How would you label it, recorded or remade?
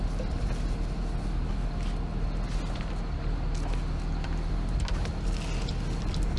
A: recorded